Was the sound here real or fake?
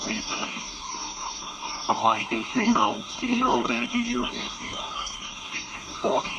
fake